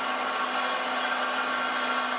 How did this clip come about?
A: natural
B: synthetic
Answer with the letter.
A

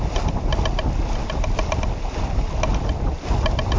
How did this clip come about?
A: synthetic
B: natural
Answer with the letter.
B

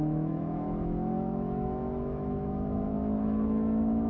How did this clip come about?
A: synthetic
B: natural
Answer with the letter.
A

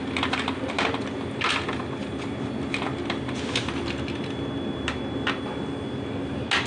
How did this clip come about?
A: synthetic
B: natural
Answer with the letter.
B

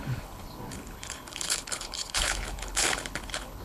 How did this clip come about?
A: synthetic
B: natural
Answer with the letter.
A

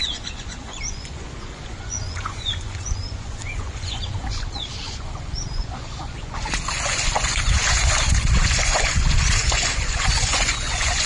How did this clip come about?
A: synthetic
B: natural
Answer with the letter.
A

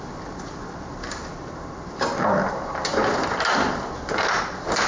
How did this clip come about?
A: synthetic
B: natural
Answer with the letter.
B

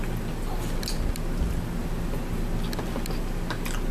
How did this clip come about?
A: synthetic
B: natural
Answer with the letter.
B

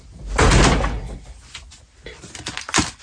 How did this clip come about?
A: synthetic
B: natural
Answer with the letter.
B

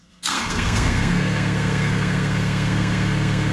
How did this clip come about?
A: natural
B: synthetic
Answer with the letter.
B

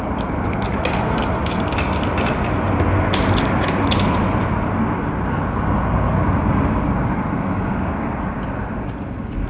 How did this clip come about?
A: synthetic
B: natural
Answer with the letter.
B